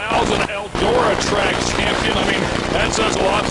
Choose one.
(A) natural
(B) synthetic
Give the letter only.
B